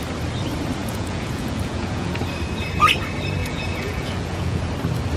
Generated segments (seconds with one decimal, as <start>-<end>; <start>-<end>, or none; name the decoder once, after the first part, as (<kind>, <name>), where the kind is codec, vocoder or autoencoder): 0.8-2.2 (vocoder, Vocos); 3.4-4.6